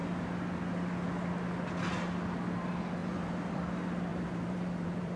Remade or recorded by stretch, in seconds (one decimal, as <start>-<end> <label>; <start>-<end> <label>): 0.0-3.0 recorded; 3.0-3.6 remade; 3.6-4.1 recorded; 4.1-5.2 remade